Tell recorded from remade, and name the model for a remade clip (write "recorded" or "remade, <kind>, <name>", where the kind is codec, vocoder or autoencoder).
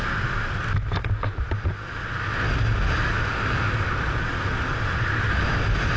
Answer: recorded